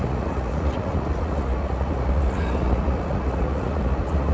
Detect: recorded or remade remade